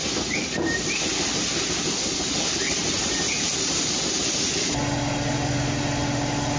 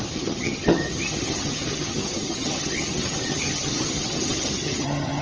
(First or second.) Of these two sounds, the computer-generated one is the second